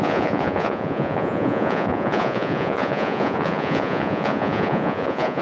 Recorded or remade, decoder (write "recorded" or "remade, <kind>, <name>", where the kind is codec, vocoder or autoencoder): remade, vocoder, Vocos